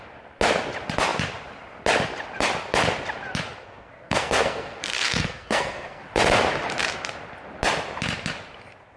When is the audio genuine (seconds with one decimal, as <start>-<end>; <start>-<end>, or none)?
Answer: 0.0-3.6; 6.0-9.0